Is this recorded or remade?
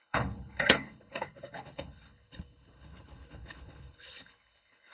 remade